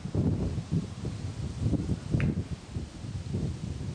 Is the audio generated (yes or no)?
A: no